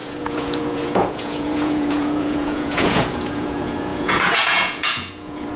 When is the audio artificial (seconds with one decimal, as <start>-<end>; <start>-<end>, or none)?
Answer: 0.0-5.6